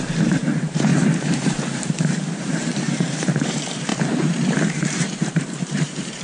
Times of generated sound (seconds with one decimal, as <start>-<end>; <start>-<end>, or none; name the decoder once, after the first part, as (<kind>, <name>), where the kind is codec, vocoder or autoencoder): 0.0-6.2 (vocoder, BigVGAN v2)